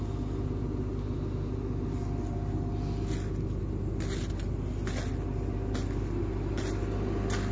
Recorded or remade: recorded